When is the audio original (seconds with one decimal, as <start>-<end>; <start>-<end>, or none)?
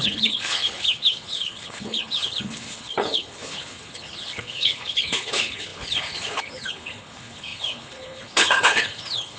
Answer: none